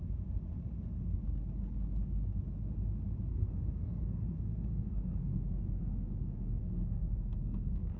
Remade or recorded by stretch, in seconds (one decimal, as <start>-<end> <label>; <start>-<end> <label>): 0.0-3.3 recorded; 3.3-8.0 remade